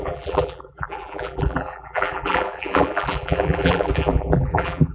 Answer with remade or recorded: remade